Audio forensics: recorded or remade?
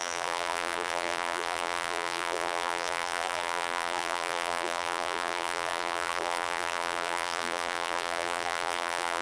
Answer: remade